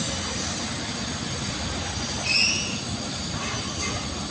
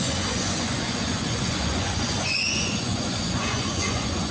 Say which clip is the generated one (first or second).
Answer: second